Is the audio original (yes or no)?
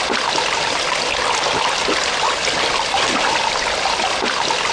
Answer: yes